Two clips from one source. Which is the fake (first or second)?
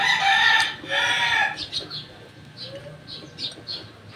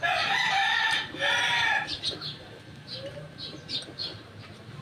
second